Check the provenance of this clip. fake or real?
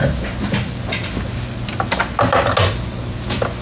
real